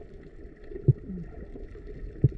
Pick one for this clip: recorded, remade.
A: recorded